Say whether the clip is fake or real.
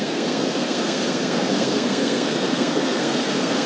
fake